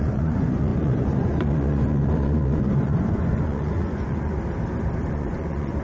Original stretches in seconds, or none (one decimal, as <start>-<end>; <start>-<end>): 4.3-5.1